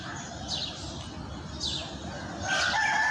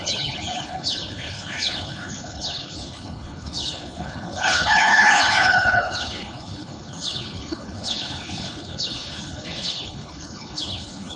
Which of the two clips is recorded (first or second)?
first